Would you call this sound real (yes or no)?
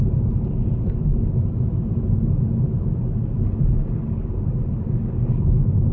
yes